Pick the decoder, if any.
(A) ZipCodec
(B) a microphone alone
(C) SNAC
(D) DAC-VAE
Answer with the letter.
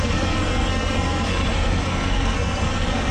C